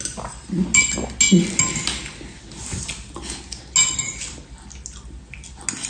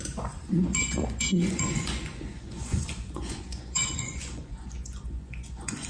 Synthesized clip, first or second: second